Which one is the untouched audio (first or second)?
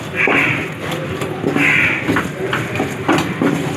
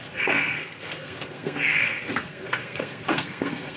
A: first